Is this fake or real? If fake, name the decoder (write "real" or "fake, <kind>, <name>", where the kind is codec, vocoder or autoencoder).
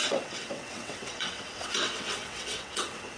fake, vocoder, WaveNeXt